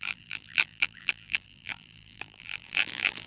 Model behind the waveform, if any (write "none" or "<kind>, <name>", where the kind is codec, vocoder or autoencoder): vocoder, BigVGAN v2